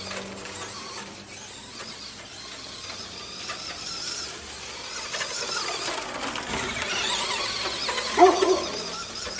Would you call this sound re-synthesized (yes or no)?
no